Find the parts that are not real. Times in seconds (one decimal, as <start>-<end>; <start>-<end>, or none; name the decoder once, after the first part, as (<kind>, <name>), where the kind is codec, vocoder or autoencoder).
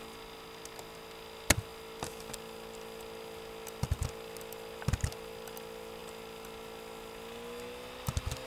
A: none